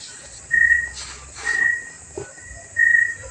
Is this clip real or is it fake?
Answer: fake